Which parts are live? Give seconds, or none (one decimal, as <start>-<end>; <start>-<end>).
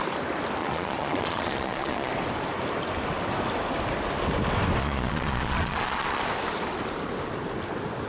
0.0-0.6; 2.1-4.8; 6.2-8.1